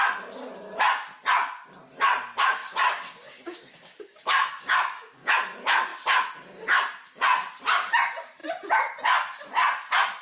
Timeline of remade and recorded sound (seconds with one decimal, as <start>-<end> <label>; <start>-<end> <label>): 0.0-2.6 recorded; 2.6-5.3 remade; 5.3-10.2 recorded